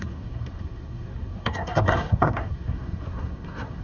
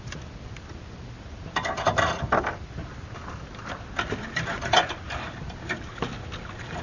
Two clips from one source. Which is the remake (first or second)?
first